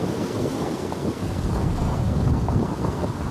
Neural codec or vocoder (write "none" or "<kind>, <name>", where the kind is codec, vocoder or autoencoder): codec, SNAC